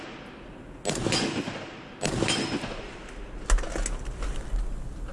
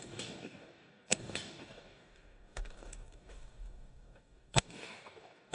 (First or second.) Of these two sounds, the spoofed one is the second